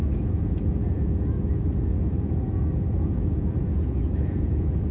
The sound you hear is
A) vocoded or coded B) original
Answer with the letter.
A